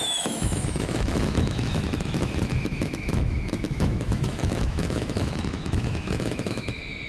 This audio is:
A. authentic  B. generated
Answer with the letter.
B